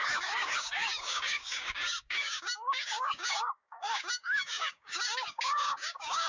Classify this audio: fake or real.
fake